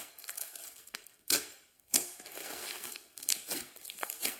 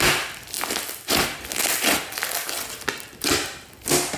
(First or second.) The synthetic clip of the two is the first